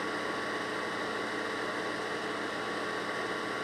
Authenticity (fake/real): real